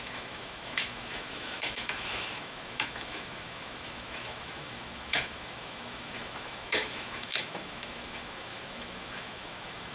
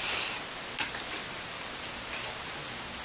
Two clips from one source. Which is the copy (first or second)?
first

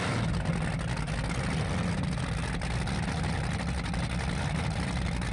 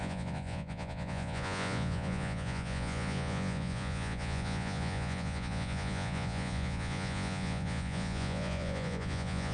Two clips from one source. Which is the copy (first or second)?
second